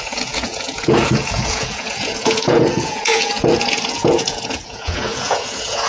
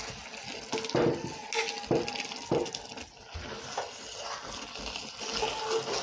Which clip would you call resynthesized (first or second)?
first